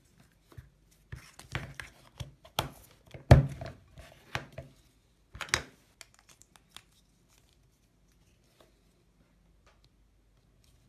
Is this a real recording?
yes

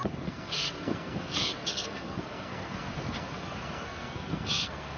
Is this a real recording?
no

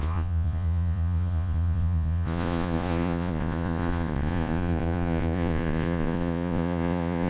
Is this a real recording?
no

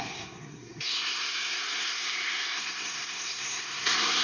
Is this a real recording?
no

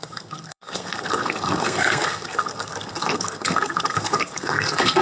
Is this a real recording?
no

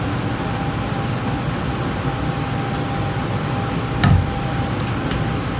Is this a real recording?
yes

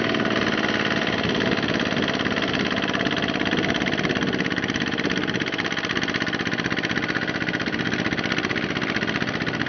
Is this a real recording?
yes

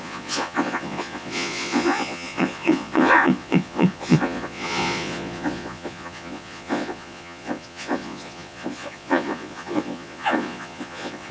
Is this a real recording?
no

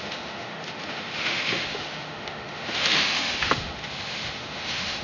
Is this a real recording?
no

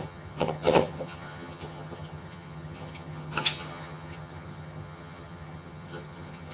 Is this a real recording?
no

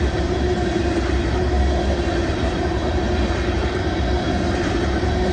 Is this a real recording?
no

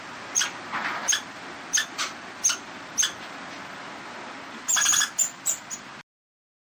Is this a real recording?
yes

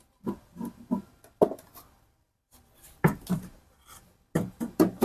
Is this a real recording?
yes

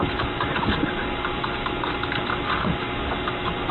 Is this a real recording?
yes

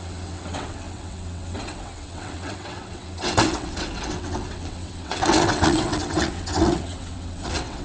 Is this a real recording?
no